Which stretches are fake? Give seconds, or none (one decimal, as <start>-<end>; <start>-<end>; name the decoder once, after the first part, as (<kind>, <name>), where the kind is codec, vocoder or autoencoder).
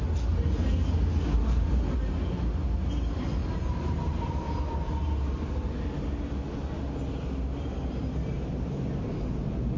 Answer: 3.4-5.5 (vocoder, BigVGAN v2)